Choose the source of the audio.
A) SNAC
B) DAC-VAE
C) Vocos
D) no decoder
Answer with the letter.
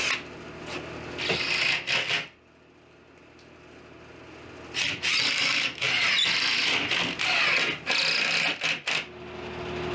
D